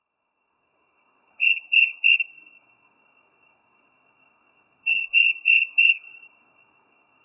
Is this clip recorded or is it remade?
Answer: remade